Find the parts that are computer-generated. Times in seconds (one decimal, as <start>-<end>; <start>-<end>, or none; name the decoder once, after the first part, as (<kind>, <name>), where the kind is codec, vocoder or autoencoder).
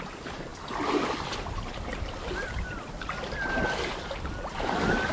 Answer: none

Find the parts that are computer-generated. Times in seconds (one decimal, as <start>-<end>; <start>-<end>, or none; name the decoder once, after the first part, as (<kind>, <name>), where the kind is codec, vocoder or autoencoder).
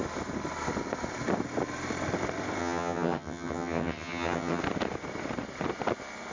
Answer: 2.6-4.6 (vocoder, HiFi-GAN)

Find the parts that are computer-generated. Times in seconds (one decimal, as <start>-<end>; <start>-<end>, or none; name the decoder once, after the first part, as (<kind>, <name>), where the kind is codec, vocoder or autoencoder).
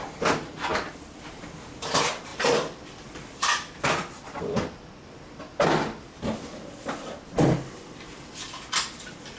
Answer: 0.7-1.4 (vocoder, BigVGAN v2); 2.3-4.4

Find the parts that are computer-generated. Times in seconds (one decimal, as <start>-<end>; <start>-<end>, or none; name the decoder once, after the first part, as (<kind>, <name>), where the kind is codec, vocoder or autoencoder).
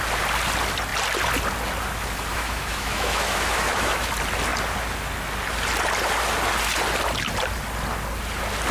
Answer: 2.3-4.1 (autoencoder, DAC-VAE)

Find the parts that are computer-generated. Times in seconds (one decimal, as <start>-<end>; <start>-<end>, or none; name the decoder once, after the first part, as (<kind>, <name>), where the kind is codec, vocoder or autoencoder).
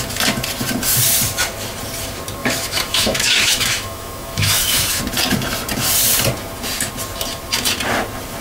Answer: 2.4-5.0 (autoencoder, DAC-VAE)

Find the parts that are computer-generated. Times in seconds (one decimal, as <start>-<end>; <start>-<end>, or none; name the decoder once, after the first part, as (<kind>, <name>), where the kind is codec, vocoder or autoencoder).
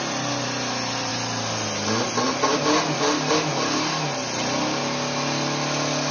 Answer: none